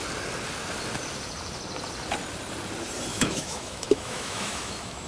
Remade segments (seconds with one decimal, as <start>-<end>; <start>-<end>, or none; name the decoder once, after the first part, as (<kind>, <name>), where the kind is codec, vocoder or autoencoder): 3.1-5.1 (autoencoder, DAC-VAE)